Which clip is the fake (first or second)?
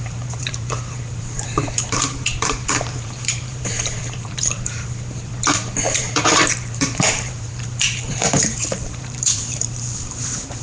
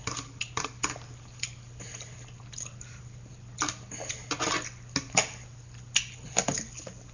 first